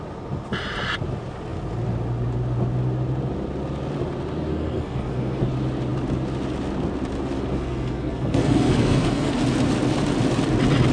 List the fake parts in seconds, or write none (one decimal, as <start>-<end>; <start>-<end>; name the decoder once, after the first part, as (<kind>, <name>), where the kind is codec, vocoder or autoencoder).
4.5-5.4 (codec, SNAC); 7.5-9.3